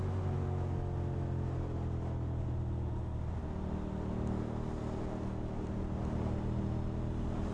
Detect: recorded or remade recorded